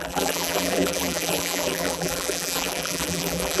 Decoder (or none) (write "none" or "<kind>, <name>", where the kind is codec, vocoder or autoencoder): vocoder, BigVGAN v2